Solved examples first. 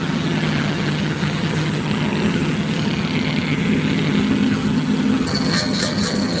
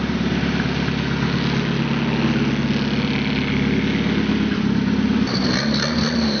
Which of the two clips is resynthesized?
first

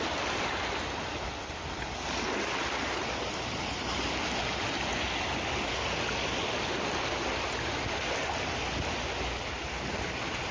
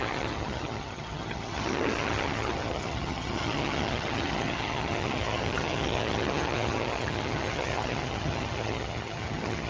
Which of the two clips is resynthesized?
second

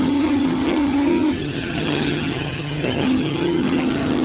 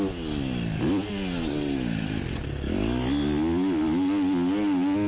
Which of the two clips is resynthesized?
first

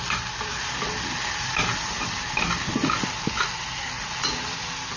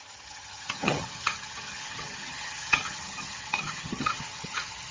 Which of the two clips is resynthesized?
second